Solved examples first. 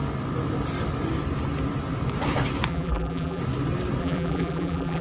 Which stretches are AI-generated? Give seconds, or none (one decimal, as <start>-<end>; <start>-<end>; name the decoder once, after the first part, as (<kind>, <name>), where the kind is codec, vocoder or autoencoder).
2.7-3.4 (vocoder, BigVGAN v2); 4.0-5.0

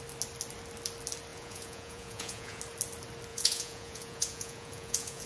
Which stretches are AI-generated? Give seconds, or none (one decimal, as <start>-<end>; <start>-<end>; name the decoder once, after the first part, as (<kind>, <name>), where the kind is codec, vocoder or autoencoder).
1.3-2.6 (vocoder, Vocos); 3.3-5.3

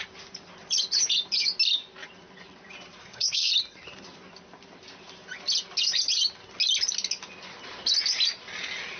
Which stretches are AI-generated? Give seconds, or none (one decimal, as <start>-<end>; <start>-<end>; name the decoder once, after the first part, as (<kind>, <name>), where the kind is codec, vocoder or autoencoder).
3.0-3.5 (codec, SNAC)